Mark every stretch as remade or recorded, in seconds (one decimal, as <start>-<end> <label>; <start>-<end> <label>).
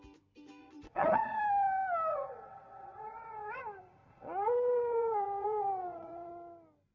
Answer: 0.0-0.6 recorded; 0.6-1.4 remade; 1.4-2.1 recorded; 2.1-3.6 remade; 3.6-4.1 recorded; 4.1-6.3 remade; 6.3-6.9 recorded